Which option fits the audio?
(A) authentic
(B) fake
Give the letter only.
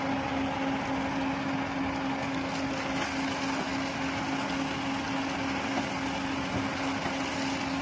A